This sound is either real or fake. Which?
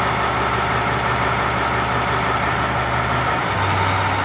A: real